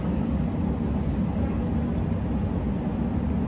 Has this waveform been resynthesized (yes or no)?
no